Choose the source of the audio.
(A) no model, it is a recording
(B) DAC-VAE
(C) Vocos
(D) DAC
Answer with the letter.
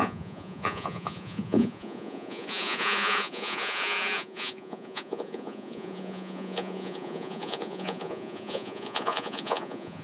C